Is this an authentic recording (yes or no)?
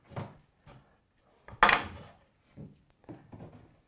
yes